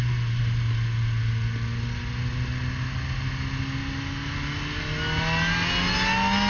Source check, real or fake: real